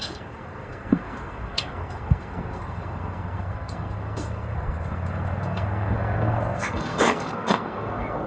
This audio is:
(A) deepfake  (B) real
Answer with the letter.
A